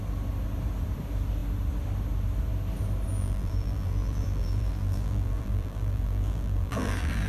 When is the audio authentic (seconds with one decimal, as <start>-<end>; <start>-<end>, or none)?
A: 0.0-3.1